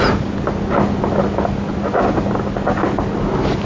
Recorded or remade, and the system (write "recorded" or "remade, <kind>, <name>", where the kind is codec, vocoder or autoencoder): recorded